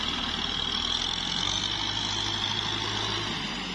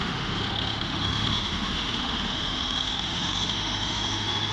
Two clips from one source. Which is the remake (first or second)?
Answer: second